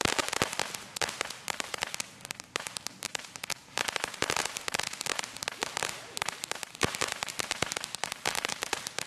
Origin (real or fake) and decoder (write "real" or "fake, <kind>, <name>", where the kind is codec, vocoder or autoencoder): fake, vocoder, BigVGAN v2